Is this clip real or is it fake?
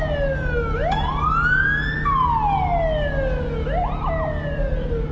real